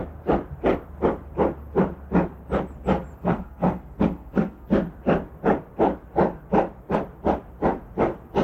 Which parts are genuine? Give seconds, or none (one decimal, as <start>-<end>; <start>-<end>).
0.0-3.2; 4.7-8.4